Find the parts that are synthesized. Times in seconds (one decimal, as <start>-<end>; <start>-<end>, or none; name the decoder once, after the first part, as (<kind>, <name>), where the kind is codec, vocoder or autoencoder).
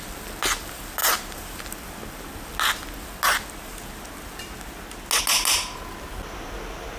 none